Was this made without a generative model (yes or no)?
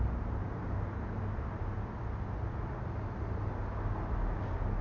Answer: yes